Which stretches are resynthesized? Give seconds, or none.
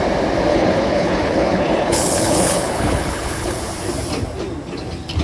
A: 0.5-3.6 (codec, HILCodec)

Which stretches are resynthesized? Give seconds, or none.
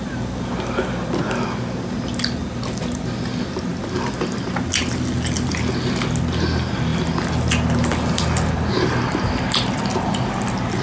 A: none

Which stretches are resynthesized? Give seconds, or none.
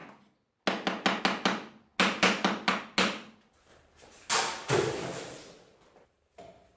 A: none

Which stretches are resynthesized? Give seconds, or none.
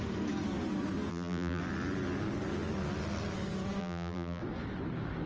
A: 1.1-1.6 (vocoder, BigVGAN v2); 3.8-4.4